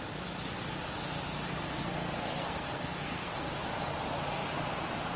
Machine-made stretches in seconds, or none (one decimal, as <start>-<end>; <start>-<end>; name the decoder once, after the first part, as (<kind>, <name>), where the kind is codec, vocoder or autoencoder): 1.6-3.5 (codec, SNAC)